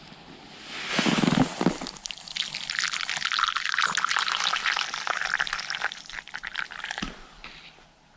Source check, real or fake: real